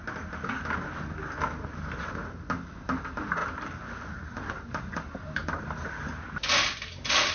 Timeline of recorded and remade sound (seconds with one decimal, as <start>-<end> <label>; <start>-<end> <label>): 0.0-3.4 recorded; 3.4-6.2 remade; 6.2-7.3 recorded